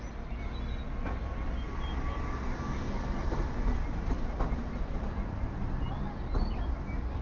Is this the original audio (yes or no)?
yes